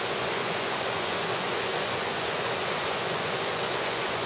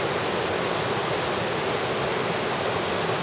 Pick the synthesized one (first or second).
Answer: first